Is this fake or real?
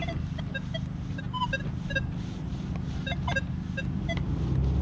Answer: real